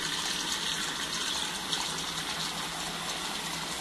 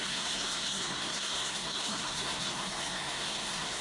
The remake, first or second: second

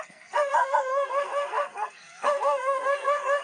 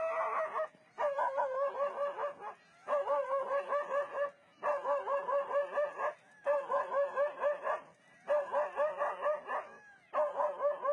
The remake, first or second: first